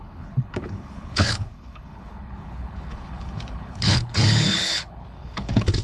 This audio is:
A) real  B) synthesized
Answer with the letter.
B